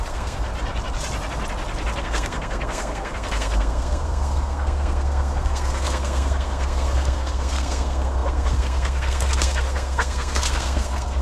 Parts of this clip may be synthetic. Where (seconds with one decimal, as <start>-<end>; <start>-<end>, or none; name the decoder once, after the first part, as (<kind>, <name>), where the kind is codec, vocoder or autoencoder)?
0.0-0.5 (codec, SNAC); 2.0-11.2